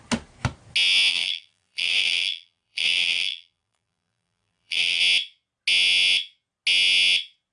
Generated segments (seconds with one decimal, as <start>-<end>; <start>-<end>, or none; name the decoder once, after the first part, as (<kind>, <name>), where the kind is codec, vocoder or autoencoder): 1.1-5.0 (vocoder, BigVGAN v2)